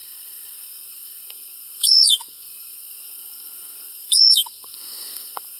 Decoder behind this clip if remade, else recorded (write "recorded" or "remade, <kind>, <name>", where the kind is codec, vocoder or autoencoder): remade, codec, SNAC